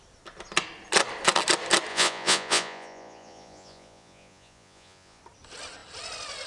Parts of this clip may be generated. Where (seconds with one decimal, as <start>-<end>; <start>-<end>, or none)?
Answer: 1.9-5.2